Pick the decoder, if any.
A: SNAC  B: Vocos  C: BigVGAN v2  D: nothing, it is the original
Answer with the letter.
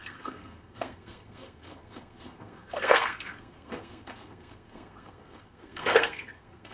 A